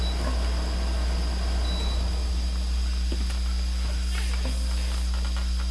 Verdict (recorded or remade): recorded